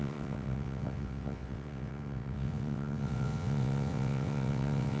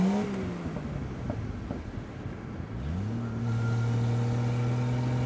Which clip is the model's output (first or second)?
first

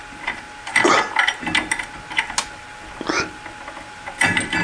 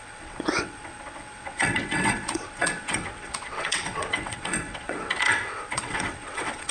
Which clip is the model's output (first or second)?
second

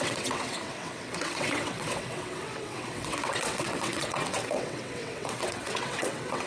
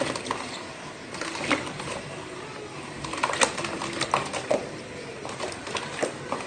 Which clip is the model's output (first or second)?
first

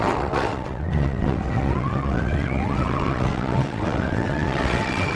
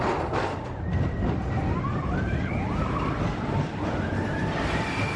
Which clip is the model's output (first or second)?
first